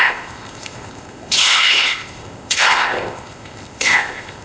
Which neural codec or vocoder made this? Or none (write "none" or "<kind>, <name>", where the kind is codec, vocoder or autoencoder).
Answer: codec, ZipCodec